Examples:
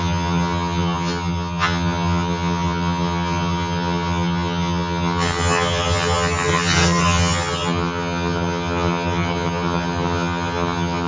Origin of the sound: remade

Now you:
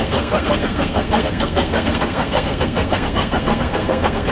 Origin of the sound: remade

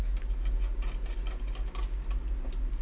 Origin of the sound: recorded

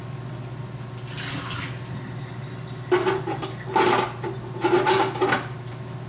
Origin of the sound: recorded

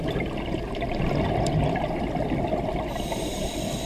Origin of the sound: recorded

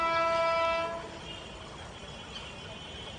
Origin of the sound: recorded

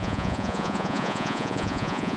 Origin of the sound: remade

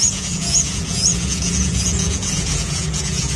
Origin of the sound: remade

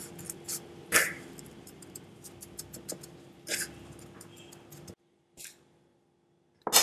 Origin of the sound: recorded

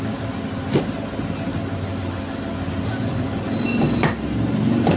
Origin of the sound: recorded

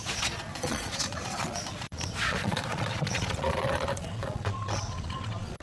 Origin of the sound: remade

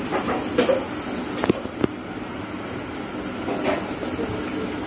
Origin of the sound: recorded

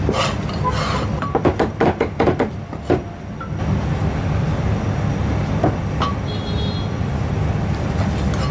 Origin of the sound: recorded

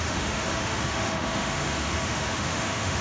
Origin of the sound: remade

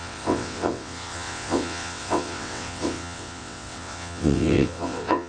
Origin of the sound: remade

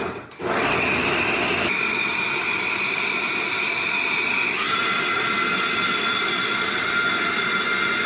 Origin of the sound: recorded